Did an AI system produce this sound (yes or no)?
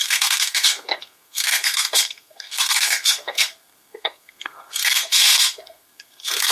yes